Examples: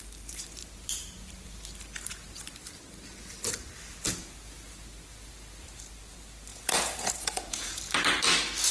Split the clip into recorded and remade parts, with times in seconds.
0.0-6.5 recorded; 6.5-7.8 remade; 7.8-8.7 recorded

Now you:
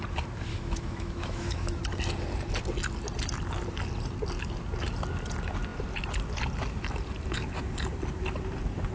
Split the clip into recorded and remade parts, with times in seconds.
0.0-0.5 recorded; 0.5-1.8 remade; 1.8-8.9 recorded

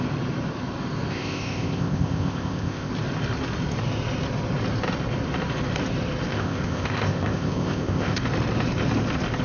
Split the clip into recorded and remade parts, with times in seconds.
0.0-1.1 recorded; 1.1-2.9 remade; 2.9-6.3 recorded; 6.3-8.2 remade; 8.2-9.4 recorded

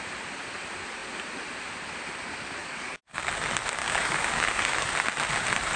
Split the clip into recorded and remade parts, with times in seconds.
0.0-2.6 recorded; 2.6-3.3 remade; 3.3-3.8 recorded; 3.8-4.9 remade; 4.9-5.8 recorded

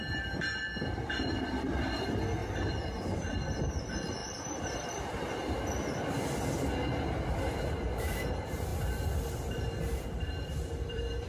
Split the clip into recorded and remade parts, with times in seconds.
0.0-2.4 recorded; 2.4-3.6 remade; 3.6-4.2 recorded; 4.2-5.1 remade; 5.1-8.7 recorded; 8.7-11.3 remade

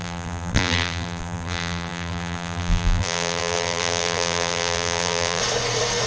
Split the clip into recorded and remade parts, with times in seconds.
0.0-5.4 remade; 5.4-6.1 recorded

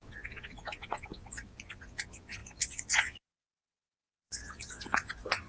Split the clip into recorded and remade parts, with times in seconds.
0.0-5.5 remade

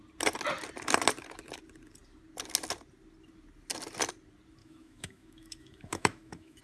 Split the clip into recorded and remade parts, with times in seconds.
0.0-4.6 recorded; 4.6-6.6 remade